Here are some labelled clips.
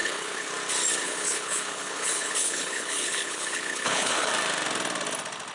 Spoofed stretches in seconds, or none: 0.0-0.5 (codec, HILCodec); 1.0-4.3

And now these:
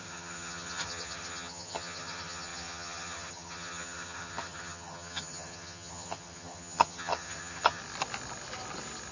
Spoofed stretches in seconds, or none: 0.0-7.8 (vocoder, HiFi-GAN)

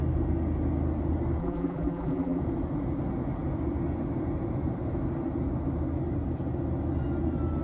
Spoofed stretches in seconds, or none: 1.4-2.4 (vocoder, BigVGAN v2)

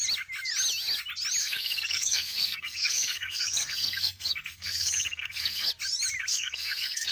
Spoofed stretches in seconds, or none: 1.4-5.7 (codec, SNAC); 6.3-7.1

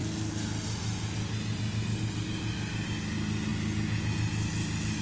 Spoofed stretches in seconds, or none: none

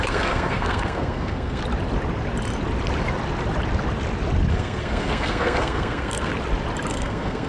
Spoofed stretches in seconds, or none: 0.0-1.6 (codec, SNAC); 4.5-6.3; 6.9-7.5

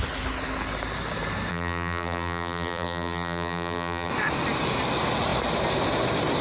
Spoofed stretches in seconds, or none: 1.5-4.1 (vocoder, BigVGAN v2)

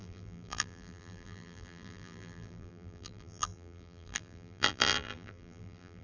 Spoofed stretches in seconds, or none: 0.0-6.0 (vocoder, BigVGAN v2)